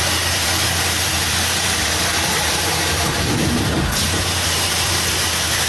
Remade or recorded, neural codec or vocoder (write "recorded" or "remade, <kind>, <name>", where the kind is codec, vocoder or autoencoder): remade, vocoder, BigVGAN v2